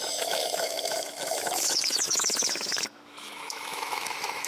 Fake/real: fake